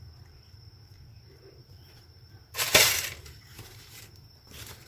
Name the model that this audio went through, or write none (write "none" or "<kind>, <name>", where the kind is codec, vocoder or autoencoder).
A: vocoder, BigVGAN v2